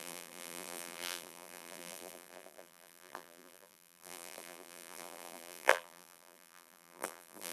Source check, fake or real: fake